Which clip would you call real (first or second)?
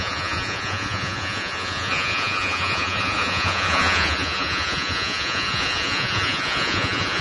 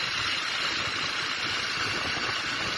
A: second